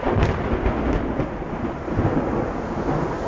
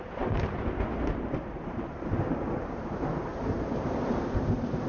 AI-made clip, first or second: second